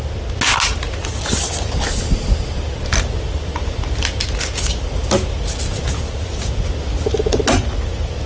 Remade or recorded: recorded